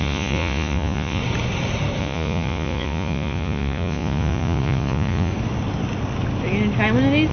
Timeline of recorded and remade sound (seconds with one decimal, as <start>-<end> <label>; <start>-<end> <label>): 0.0-1.2 remade; 1.2-2.0 recorded; 2.0-5.3 remade; 5.3-7.3 recorded